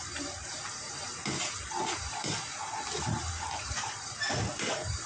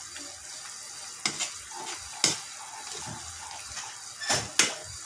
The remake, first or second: first